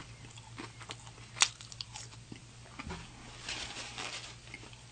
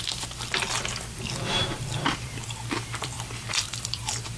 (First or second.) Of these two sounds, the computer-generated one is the second